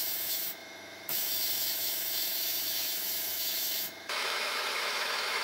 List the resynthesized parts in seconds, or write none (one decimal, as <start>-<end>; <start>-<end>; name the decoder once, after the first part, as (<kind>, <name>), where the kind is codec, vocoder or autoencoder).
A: 0.0-5.4 (autoencoder, DAC-VAE)